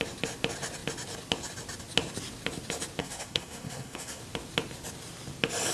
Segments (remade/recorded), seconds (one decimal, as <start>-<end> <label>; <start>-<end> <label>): 0.0-3.0 recorded; 3.0-4.2 remade; 4.2-5.7 recorded

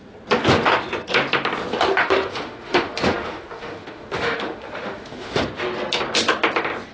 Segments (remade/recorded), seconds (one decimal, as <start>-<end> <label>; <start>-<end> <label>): 0.0-2.0 recorded; 2.0-5.4 remade; 5.4-6.9 recorded

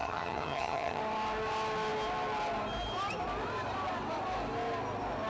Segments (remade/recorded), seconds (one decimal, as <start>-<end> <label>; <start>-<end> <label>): 0.0-1.0 remade; 1.0-5.3 recorded

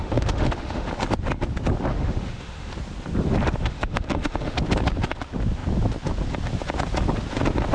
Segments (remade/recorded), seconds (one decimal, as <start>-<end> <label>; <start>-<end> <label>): 0.0-0.9 remade; 0.9-1.9 recorded; 1.9-2.7 remade; 2.7-3.6 recorded; 3.6-4.6 remade; 4.6-7.7 recorded

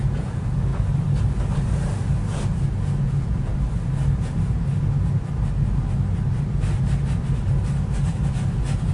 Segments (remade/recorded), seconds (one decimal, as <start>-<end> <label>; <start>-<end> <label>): 0.0-0.7 remade; 0.7-3.0 recorded; 3.0-3.5 remade; 3.5-8.9 recorded

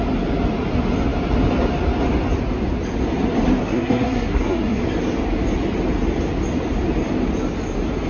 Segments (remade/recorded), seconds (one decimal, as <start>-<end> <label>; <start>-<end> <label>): 0.0-3.6 recorded; 3.6-4.8 remade; 4.8-8.1 recorded

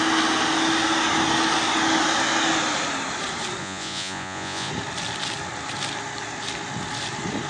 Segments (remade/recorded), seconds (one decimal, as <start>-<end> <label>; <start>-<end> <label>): 0.0-3.6 recorded; 3.6-4.7 remade; 4.7-7.5 recorded